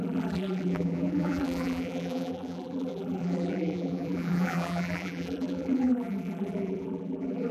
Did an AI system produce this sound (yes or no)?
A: yes